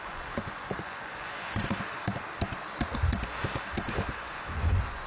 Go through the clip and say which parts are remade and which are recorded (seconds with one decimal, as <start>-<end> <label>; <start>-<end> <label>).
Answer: 0.0-1.6 remade; 1.6-4.1 recorded; 4.1-5.1 remade